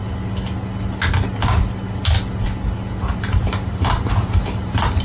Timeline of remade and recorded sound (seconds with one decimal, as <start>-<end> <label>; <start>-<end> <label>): 0.0-3.0 recorded; 3.0-5.0 remade